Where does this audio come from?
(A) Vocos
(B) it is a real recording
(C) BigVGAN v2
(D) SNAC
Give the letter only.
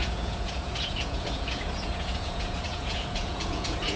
A